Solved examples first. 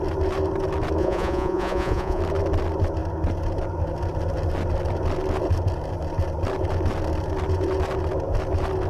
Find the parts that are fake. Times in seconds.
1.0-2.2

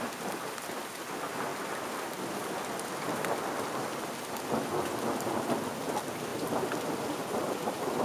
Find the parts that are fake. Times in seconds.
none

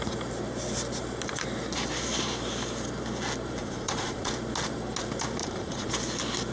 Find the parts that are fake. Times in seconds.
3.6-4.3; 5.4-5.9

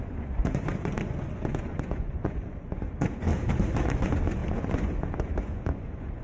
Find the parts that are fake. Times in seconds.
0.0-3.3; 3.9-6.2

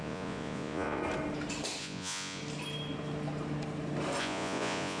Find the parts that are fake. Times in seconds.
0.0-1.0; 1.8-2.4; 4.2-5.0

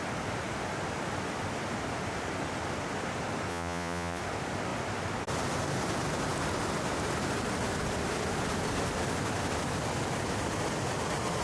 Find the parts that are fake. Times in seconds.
3.5-4.2